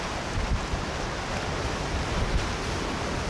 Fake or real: real